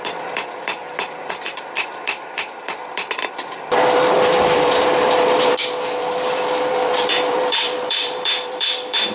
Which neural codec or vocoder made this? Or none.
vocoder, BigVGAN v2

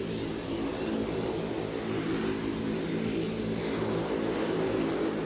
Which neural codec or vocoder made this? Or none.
none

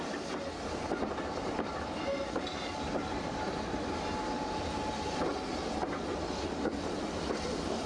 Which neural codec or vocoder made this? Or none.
none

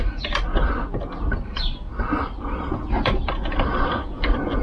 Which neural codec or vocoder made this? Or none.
none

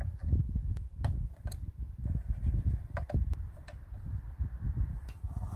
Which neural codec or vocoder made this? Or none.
vocoder, BigVGAN v2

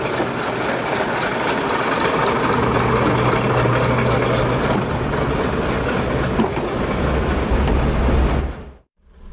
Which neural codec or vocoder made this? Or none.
none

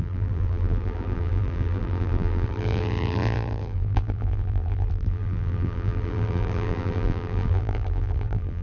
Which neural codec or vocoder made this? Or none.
vocoder, BigVGAN v2